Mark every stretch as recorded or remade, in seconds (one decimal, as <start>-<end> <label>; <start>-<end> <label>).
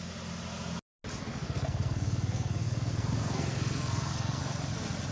0.0-1.3 recorded; 1.3-4.4 remade; 4.4-5.1 recorded